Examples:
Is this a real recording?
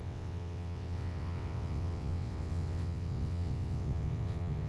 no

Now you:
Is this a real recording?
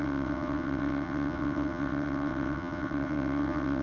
no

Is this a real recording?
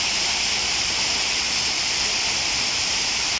yes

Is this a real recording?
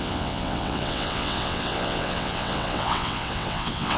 no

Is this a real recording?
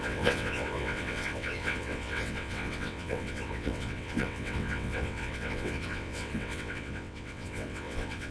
no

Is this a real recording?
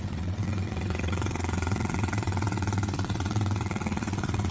no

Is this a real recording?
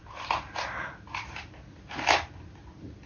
yes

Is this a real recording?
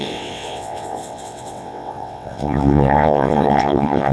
no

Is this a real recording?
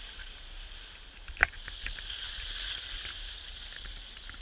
yes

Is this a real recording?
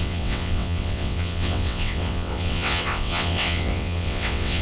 no